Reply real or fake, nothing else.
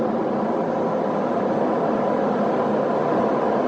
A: real